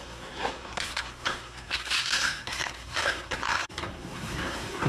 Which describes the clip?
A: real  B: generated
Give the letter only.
B